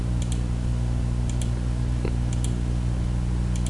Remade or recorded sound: recorded